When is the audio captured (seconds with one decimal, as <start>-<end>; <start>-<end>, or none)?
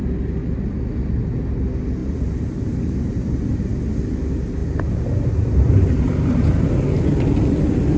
0.0-2.0; 3.1-4.6; 6.7-8.0